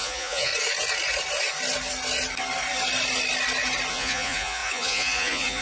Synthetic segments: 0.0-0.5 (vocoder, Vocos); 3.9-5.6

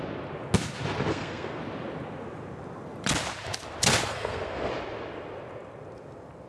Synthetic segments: 1.1-1.6 (codec, SNAC); 4.1-4.7

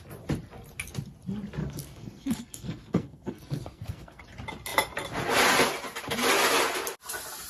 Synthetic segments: 1.6-4.2 (codec, SNAC)

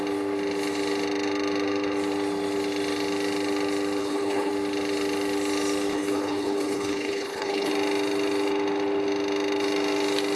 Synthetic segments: 4.0-4.5 (codec, HILCodec); 5.9-7.7

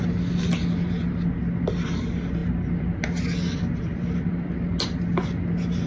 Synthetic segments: none

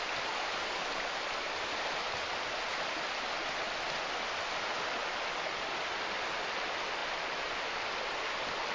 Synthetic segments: none

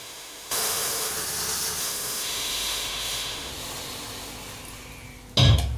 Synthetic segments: 0.0-1.1 (autoencoder, DAC-VAE); 1.8-3.5